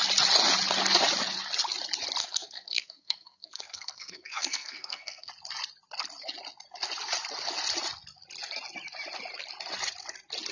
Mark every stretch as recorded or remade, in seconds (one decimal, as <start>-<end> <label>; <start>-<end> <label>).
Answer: 0.0-2.2 recorded; 2.2-5.3 remade; 5.3-10.5 recorded